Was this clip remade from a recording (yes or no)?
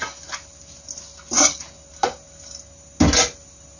no